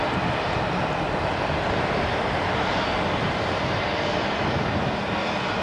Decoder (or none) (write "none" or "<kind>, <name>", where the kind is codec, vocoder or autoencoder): none